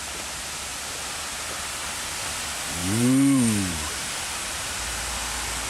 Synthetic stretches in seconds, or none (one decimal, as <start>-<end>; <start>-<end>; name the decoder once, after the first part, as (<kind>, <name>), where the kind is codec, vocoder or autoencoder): 2.8-4.8 (vocoder, BigVGAN v2)